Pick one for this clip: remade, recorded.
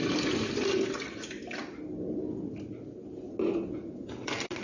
recorded